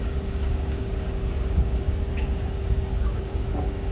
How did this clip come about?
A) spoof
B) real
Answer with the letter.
A